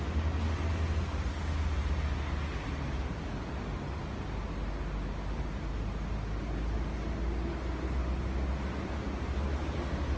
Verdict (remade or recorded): recorded